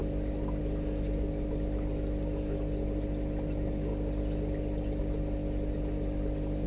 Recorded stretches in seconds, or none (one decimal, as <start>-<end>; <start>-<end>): 0.0-6.7